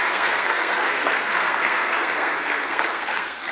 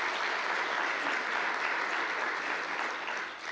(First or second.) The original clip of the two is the second